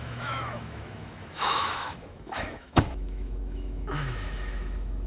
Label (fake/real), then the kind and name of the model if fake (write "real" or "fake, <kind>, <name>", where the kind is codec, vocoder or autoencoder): fake, autoencoder, DAC-VAE